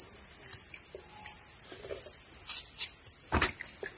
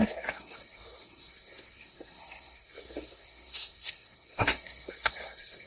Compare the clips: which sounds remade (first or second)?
second